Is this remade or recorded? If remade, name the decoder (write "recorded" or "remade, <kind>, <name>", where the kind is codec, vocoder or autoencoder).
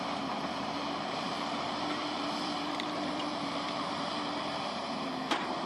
remade, vocoder, BigVGAN v2